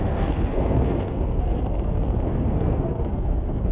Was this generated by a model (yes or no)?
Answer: yes